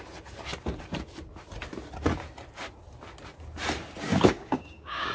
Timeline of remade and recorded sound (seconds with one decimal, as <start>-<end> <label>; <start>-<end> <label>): 0.0-4.1 recorded; 4.1-5.1 remade